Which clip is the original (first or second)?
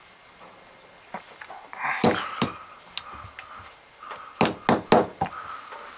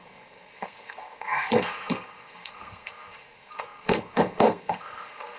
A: first